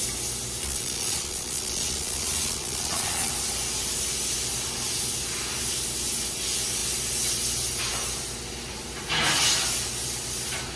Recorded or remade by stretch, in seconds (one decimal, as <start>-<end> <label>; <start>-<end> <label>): 0.0-0.6 recorded; 0.6-3.3 remade; 3.3-10.8 recorded